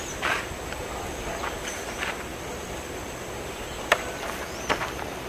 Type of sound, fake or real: fake